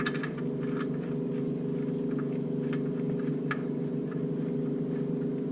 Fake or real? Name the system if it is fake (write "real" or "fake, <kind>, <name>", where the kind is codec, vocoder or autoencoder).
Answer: real